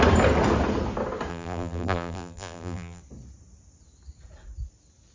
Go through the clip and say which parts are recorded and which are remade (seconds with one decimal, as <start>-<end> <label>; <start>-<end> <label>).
0.0-1.3 recorded; 1.3-3.0 remade; 3.0-5.1 recorded

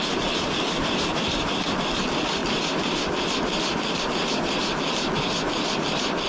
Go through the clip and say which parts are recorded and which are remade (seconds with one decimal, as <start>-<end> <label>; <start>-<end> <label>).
0.0-2.4 recorded; 2.4-4.0 remade; 4.0-6.3 recorded

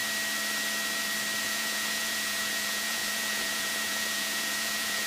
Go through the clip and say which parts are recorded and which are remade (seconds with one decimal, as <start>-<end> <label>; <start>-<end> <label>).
0.0-1.4 recorded; 1.4-5.1 remade

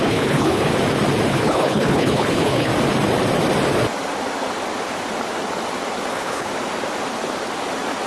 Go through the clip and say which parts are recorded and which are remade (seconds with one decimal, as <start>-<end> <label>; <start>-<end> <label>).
0.0-0.7 remade; 0.7-1.3 recorded; 1.3-2.7 remade; 2.7-6.1 recorded; 6.1-6.5 remade; 6.5-8.1 recorded

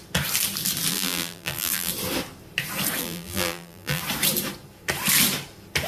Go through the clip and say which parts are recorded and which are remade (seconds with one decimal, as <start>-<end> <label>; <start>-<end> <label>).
0.0-0.9 recorded; 0.9-1.9 remade; 1.9-3.0 recorded; 3.0-4.0 remade; 4.0-5.9 recorded

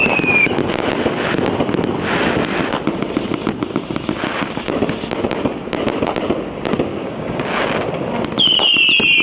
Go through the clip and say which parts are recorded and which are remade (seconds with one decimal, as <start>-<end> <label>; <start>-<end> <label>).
0.0-6.9 recorded; 6.9-7.4 remade; 7.4-9.2 recorded